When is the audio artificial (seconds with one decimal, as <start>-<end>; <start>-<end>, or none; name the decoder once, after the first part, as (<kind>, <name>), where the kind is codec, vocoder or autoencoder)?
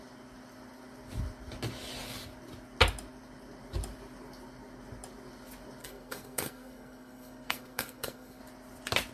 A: 5.8-8.4 (codec, SNAC)